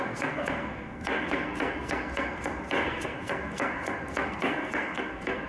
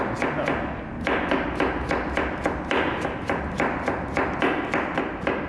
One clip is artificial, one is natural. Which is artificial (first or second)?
first